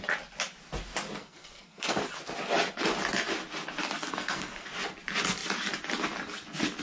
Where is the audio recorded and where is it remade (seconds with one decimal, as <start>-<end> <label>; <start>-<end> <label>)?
0.0-1.2 recorded; 1.2-2.0 remade; 2.0-4.1 recorded; 4.1-4.7 remade; 4.7-6.8 recorded